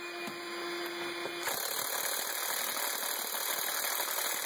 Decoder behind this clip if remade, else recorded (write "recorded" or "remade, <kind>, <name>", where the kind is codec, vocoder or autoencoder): recorded